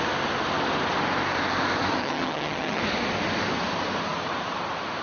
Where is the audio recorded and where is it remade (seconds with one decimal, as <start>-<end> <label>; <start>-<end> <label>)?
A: 0.0-2.0 recorded; 2.0-2.8 remade; 2.8-5.0 recorded